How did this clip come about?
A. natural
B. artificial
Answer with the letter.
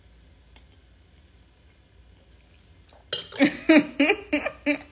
A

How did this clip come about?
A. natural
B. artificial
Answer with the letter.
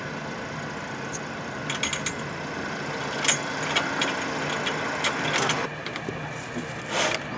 A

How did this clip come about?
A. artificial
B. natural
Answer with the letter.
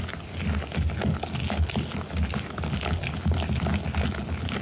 B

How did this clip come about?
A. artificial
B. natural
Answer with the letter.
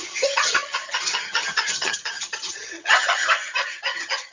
A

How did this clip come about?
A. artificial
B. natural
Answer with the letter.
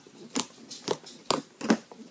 B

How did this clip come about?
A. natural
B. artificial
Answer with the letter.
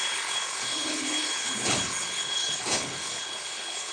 B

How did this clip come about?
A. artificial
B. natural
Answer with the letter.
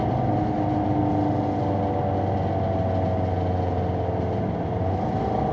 B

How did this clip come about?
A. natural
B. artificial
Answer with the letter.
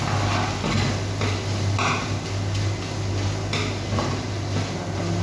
A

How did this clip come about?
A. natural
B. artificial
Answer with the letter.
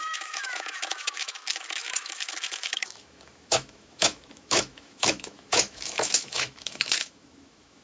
B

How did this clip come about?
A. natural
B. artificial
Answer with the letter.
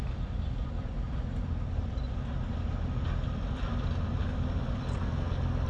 A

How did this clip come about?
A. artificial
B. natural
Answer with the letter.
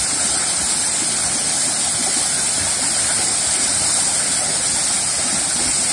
B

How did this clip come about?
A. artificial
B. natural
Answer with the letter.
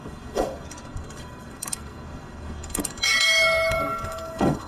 A